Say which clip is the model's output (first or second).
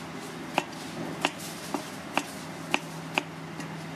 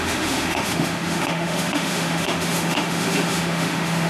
second